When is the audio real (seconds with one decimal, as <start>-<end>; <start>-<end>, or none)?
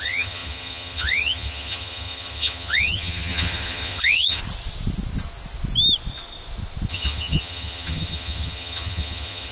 4.4-6.9